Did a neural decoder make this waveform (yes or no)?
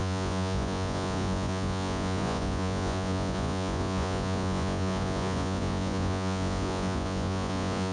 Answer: yes